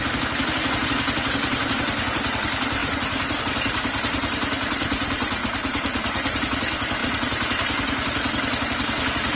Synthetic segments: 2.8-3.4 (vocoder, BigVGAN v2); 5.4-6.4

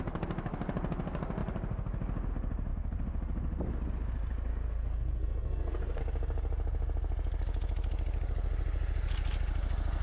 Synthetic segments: 4.5-6.0 (codec, SNAC)